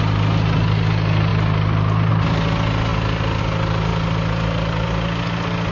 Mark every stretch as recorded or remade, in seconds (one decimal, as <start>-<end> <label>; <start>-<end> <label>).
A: 0.0-5.7 recorded